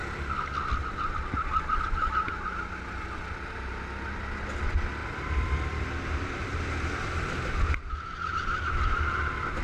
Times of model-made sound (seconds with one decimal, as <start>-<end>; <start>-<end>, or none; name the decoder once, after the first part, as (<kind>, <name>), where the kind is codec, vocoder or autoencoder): 5.0-7.7 (vocoder, BigVGAN v2); 8.3-9.2